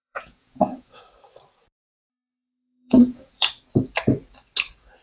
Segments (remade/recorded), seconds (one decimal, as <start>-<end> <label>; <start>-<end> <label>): 0.0-1.0 remade; 1.0-2.1 recorded; 2.1-3.5 remade; 3.5-5.0 recorded